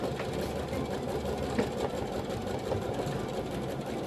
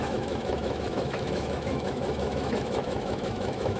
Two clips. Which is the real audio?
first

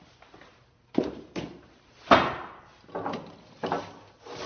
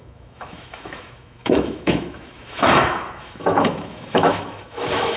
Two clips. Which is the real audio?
first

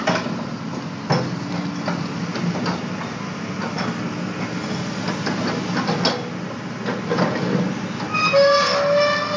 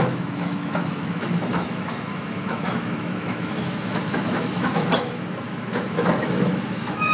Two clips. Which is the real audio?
first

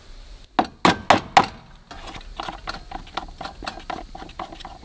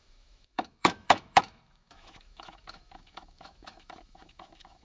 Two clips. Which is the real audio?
first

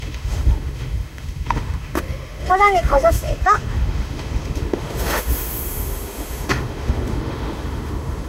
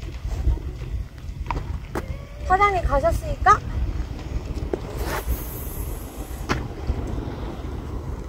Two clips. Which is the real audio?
second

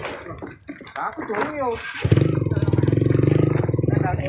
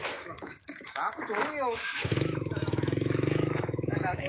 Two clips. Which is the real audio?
first